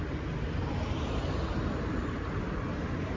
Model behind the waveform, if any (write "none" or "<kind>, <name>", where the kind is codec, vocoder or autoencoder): none